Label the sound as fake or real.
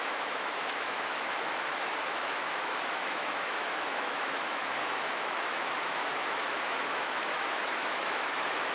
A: fake